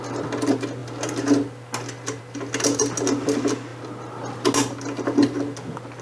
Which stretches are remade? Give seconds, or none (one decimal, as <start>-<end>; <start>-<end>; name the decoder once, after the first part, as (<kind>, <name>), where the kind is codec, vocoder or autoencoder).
none